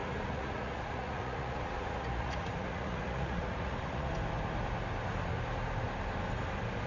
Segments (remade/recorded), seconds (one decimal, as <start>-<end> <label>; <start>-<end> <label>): 0.0-4.1 remade; 4.1-6.9 recorded